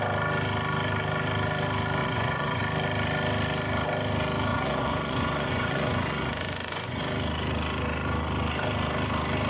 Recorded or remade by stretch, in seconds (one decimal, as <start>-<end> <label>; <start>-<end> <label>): 0.0-2.0 recorded; 2.0-2.6 remade; 2.6-4.5 recorded; 4.5-7.0 remade; 7.0-9.5 recorded